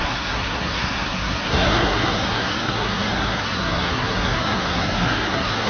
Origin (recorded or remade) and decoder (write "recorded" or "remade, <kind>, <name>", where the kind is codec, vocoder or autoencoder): remade, codec, SNAC